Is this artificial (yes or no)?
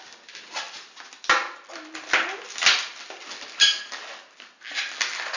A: no